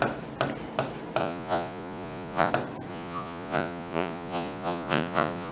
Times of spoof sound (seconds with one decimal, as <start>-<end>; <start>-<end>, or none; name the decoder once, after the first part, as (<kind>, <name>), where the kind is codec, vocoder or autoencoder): 1.2-2.5 (vocoder, Vocos); 2.9-5.5